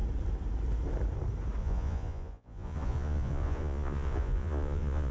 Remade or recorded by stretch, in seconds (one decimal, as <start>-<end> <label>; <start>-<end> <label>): 0.0-1.6 recorded; 1.6-5.1 remade